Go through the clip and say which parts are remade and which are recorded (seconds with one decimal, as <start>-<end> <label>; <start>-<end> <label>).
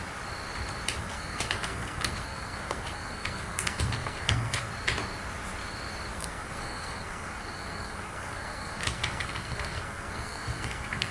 0.0-1.0 recorded; 1.0-4.7 remade; 4.7-6.1 recorded; 6.1-11.1 remade